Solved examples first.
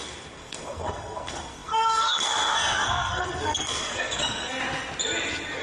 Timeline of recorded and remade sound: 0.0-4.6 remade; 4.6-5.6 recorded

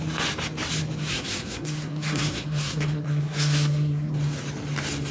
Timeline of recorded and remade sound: 0.0-1.0 recorded; 1.0-4.1 remade; 4.1-5.1 recorded

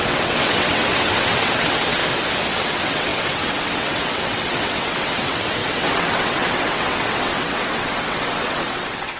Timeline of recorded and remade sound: 0.0-2.0 remade; 2.0-2.5 recorded; 2.5-9.2 remade

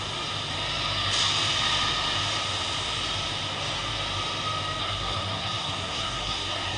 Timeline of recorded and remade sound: 0.0-4.8 recorded; 4.8-6.8 remade

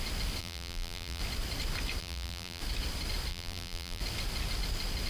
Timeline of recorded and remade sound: 0.0-0.4 recorded; 0.4-1.2 remade; 1.2-2.0 recorded; 2.0-2.6 remade; 2.6-3.3 recorded; 3.3-4.0 remade; 4.0-5.1 recorded

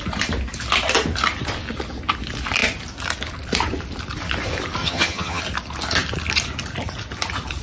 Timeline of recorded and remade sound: 0.0-4.8 recorded; 4.8-5.4 remade; 5.4-7.6 recorded